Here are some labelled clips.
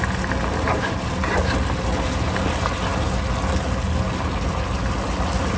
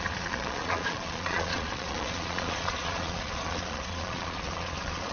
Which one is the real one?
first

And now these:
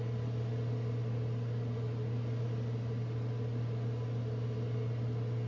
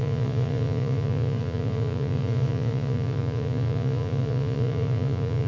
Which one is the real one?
first